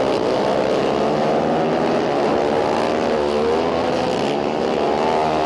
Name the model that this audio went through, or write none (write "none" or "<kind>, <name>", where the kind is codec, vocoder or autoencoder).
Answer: none